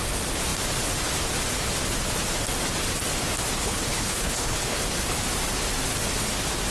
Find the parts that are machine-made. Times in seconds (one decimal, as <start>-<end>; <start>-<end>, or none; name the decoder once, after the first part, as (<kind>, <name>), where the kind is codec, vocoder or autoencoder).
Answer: 3.6-4.8 (codec, HILCodec)